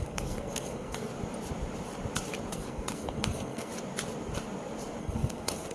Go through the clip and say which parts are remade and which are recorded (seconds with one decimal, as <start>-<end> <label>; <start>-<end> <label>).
0.0-1.1 remade; 1.1-2.5 recorded; 2.5-3.7 remade; 3.7-5.0 recorded; 5.0-5.7 remade